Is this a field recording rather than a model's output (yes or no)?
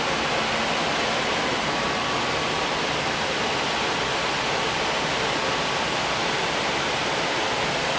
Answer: yes